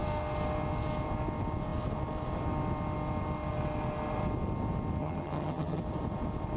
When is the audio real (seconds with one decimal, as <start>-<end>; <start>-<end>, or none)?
0.0-5.0; 5.8-6.6